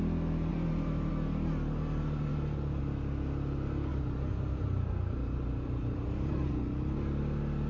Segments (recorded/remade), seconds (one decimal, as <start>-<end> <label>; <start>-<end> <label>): 0.0-0.5 recorded; 0.5-1.1 remade; 1.1-2.3 recorded; 2.3-2.8 remade; 2.8-3.9 recorded; 3.9-6.5 remade; 6.5-7.7 recorded